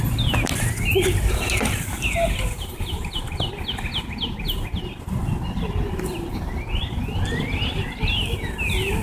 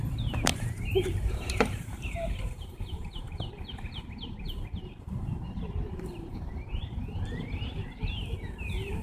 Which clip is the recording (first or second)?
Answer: first